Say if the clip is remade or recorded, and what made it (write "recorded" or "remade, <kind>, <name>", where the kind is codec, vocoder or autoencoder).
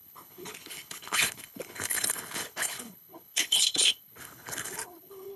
remade, codec, HILCodec